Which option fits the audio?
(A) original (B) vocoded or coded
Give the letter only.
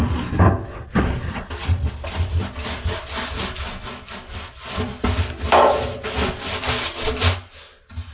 A